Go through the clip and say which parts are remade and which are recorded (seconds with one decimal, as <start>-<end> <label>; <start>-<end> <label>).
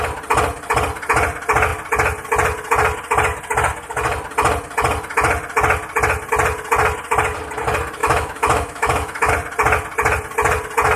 0.0-8.0 recorded; 8.0-9.3 remade; 9.3-11.0 recorded